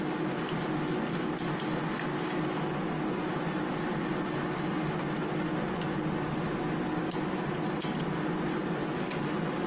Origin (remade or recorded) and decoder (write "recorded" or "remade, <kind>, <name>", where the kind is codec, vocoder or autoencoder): recorded